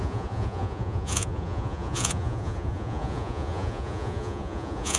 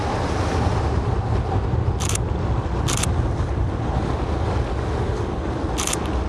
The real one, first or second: second